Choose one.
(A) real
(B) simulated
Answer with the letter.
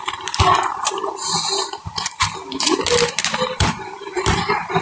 B